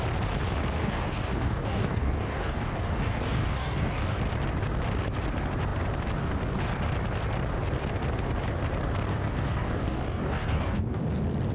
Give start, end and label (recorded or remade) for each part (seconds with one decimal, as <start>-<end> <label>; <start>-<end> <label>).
0.0-0.8 recorded; 0.8-4.2 remade; 4.2-9.1 recorded; 9.1-11.0 remade; 11.0-11.5 recorded